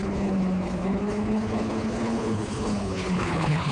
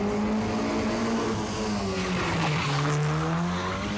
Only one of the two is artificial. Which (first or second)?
first